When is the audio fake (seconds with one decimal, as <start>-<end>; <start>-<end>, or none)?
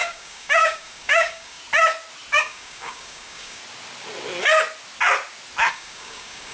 0.0-1.6; 2.4-3.6; 5.7-6.5